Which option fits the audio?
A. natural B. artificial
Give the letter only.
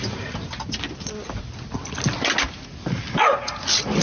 A